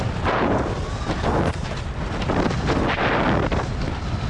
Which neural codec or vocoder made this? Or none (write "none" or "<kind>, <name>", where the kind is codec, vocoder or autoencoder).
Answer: none